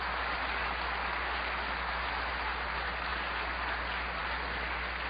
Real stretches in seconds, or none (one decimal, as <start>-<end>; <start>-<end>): 0.0-5.1